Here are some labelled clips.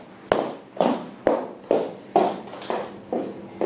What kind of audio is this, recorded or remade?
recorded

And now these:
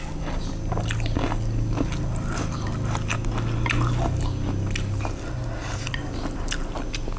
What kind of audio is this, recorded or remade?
recorded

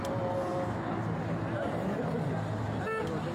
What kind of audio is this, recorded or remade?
recorded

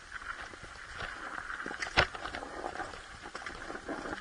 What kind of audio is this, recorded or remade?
recorded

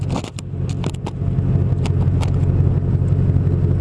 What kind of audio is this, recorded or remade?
recorded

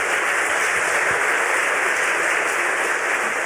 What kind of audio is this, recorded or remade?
recorded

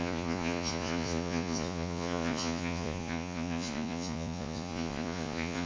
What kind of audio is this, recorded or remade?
remade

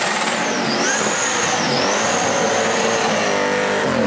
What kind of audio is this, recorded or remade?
recorded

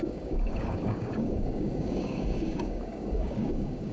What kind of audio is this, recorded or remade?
remade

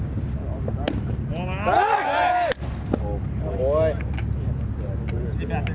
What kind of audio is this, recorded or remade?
recorded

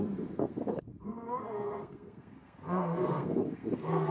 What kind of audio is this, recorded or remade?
remade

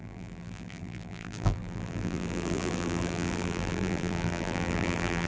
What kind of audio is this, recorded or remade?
remade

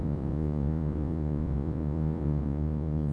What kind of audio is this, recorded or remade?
remade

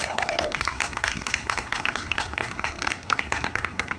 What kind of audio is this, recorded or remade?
remade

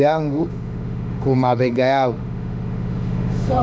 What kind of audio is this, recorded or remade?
remade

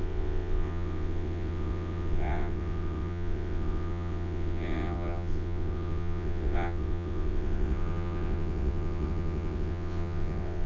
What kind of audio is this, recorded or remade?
remade